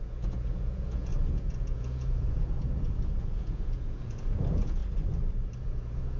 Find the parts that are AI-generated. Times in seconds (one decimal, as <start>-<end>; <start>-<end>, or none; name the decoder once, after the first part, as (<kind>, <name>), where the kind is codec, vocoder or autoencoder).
0.0-4.8 (vocoder, Vocos); 5.6-6.2